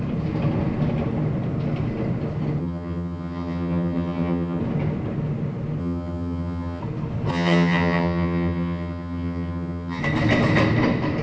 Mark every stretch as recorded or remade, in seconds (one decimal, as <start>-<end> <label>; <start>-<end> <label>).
0.0-2.6 recorded; 2.6-4.6 remade; 4.6-5.8 recorded; 5.8-6.8 remade; 6.8-7.3 recorded; 7.3-10.0 remade; 10.0-11.2 recorded